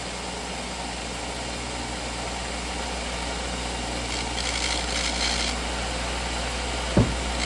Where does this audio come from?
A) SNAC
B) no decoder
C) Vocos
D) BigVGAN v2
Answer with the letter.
B